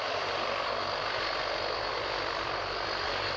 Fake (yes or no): yes